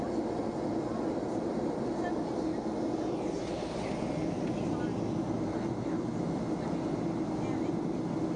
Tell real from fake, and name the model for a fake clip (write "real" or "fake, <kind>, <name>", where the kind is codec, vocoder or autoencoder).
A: real